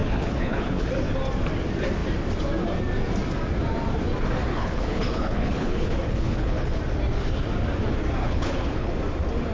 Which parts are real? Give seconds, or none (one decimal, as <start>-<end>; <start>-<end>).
0.9-4.5; 6.8-8.2; 8.9-9.5